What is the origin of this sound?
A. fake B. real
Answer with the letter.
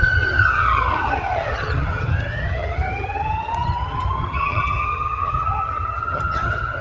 A